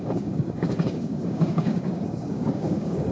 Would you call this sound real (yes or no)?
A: no